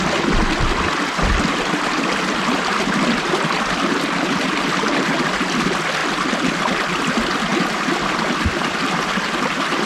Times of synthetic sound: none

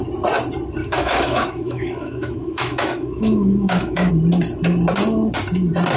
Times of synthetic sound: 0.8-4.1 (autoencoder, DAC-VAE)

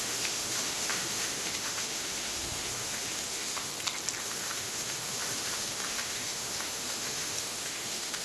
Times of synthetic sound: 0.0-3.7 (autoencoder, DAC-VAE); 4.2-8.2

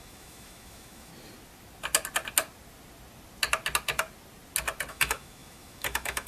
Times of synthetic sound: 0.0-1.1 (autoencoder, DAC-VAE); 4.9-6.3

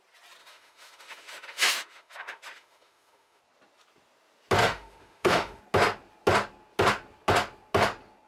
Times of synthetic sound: 0.4-3.4 (autoencoder, DAC-VAE); 4.6-5.6

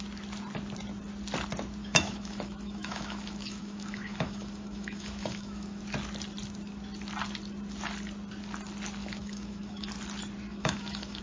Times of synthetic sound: 1.8-5.8 (autoencoder, DAC-VAE); 9.0-9.9; 10.5-11.2

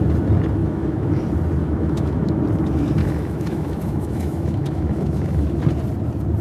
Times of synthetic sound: 0.6-1.2 (autoencoder, DAC-VAE); 1.6-2.4; 3.0-5.6